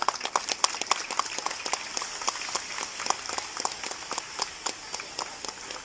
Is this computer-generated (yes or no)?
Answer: no